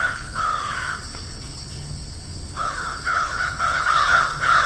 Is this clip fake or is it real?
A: fake